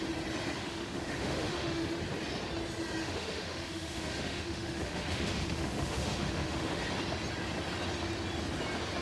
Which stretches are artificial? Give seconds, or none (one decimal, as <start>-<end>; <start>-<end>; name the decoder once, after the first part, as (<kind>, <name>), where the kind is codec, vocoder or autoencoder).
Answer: 0.6-2.0 (autoencoder, DAC-VAE); 3.0-6.8